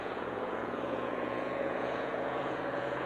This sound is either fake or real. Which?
fake